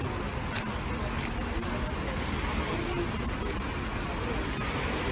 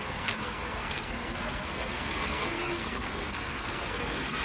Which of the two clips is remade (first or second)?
second